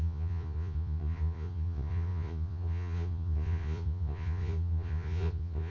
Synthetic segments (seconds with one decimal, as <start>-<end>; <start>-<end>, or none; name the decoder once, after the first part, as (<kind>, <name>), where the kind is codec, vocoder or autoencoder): 0.0-5.7 (vocoder, Vocos)